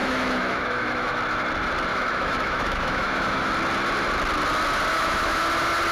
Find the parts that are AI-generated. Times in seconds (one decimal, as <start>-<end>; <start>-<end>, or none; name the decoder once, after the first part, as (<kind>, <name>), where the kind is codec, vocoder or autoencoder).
0.0-1.2 (autoencoder, DAC-VAE); 1.9-3.5; 4.9-5.4